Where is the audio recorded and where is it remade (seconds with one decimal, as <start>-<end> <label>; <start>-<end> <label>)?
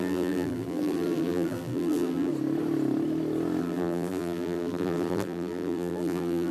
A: 0.0-2.3 remade; 2.3-3.6 recorded; 3.6-6.5 remade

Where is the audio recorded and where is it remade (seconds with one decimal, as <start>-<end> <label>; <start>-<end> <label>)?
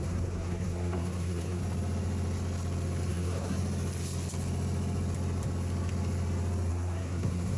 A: 0.0-1.6 remade; 1.6-3.1 recorded; 3.1-3.6 remade; 3.6-6.7 recorded; 6.7-7.6 remade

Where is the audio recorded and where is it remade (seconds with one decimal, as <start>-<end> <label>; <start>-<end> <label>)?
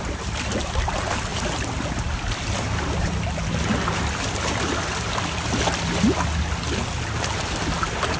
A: 0.0-8.2 recorded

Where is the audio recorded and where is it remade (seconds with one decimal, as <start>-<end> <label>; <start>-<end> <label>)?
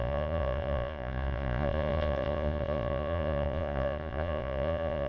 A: 0.0-5.1 remade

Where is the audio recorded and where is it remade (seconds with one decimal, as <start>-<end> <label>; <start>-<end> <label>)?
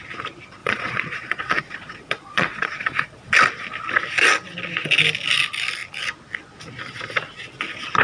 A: 0.0-0.6 recorded; 0.6-3.3 remade; 3.3-8.0 recorded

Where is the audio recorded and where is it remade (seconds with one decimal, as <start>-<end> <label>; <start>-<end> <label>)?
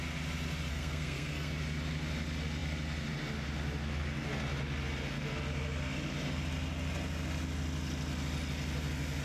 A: 0.0-0.7 recorded; 0.7-1.5 remade; 1.5-9.2 recorded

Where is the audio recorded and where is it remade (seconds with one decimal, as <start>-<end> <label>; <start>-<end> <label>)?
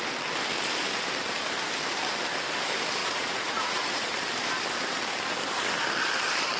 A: 0.0-3.0 recorded; 3.0-4.0 remade; 4.0-6.6 recorded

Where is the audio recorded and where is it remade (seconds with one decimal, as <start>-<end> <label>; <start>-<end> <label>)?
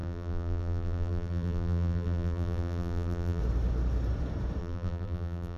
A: 0.0-3.4 remade; 3.4-4.6 recorded; 4.6-5.6 remade